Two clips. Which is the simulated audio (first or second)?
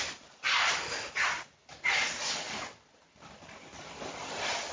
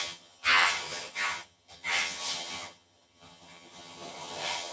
second